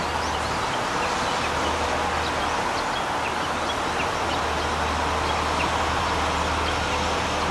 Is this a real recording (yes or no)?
yes